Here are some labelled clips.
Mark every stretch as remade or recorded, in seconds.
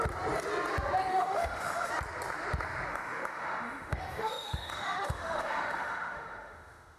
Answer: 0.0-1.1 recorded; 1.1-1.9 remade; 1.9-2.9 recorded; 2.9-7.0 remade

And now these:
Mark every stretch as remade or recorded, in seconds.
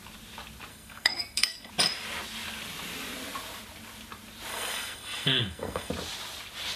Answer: 0.0-0.7 recorded; 0.7-1.7 remade; 1.7-4.5 recorded; 4.5-5.9 remade; 5.9-6.8 recorded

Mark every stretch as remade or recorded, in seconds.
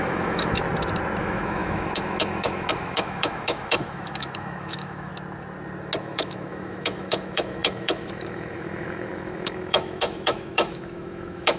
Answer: 0.0-0.6 remade; 0.6-1.2 recorded; 1.2-5.1 remade; 5.1-6.0 recorded; 6.0-11.6 remade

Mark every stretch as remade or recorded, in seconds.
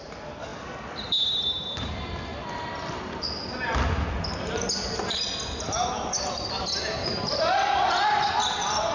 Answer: 0.0-2.3 remade; 2.3-6.5 recorded; 6.5-8.9 remade